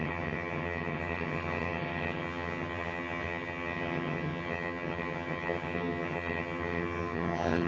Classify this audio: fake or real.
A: fake